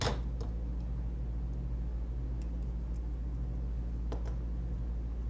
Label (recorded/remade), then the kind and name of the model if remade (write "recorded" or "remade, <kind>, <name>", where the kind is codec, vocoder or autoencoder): recorded